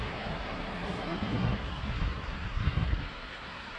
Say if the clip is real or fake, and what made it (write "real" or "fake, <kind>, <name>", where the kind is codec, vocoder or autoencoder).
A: fake, codec, SNAC